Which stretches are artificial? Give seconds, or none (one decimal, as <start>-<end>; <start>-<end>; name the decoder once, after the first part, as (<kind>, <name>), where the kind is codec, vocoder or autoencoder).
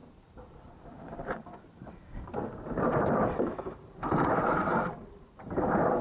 0.0-6.0 (vocoder, BigVGAN v2)